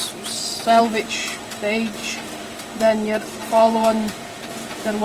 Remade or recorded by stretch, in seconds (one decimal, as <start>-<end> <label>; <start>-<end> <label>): 0.0-3.4 recorded; 3.4-5.0 remade